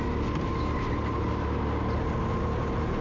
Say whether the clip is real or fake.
real